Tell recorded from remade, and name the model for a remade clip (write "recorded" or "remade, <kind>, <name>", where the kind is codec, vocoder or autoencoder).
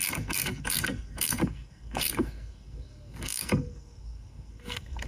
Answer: remade, codec, SNAC